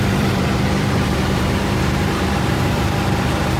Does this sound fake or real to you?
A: fake